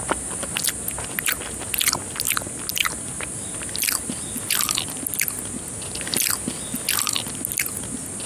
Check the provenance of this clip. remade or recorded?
recorded